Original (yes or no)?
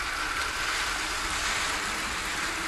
yes